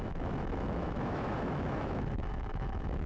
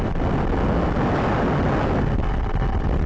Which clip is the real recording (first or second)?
second